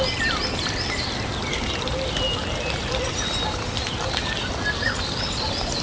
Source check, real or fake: real